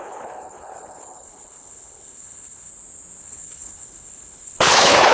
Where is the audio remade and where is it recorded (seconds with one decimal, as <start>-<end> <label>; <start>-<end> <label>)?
0.0-2.7 remade; 2.7-3.2 recorded; 3.2-5.1 remade